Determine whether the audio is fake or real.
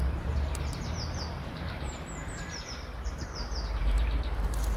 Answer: fake